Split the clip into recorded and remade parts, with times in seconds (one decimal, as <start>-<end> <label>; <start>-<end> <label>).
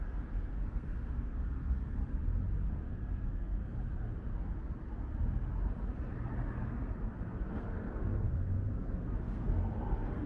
0.0-2.0 remade; 2.0-2.7 recorded; 2.7-3.6 remade; 3.6-6.8 recorded; 6.8-10.3 remade